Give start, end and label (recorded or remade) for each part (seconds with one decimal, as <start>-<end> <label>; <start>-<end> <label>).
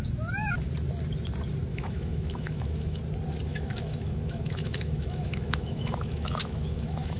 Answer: 0.0-1.7 recorded; 1.7-3.0 remade; 3.0-3.5 recorded; 3.5-7.2 remade